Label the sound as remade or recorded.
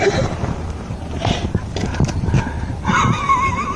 remade